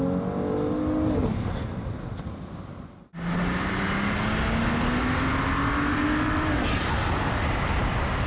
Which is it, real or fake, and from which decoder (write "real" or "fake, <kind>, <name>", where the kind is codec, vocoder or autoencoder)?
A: real